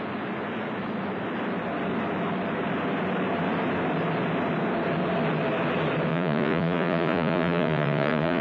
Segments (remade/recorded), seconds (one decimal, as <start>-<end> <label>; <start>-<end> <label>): 0.0-6.1 recorded; 6.1-8.4 remade